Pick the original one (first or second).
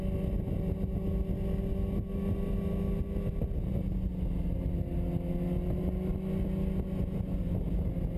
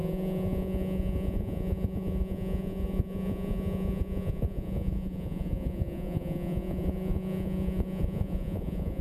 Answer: first